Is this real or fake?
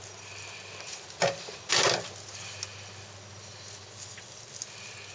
real